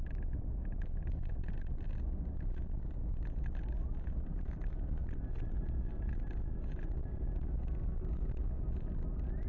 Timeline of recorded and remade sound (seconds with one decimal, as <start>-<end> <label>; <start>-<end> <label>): 0.0-9.5 recorded